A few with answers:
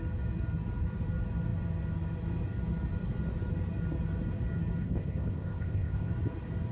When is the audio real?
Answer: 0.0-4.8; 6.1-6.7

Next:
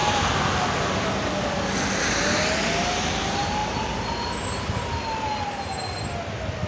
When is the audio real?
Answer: 0.0-6.7

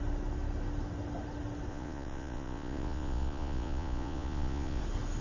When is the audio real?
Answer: 0.0-1.7; 4.8-5.2

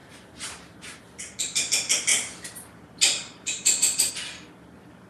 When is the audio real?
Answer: 1.0-2.1; 4.1-5.1